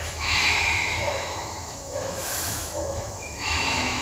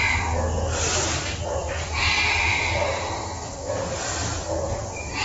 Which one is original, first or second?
second